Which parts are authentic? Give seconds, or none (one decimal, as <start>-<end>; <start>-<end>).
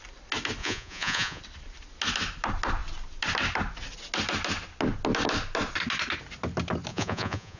0.0-0.6; 1.4-6.9